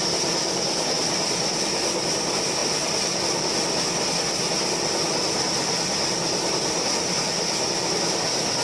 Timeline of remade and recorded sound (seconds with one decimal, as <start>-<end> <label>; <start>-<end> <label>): 0.0-8.6 recorded